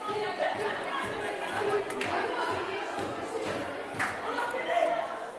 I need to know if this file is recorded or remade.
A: remade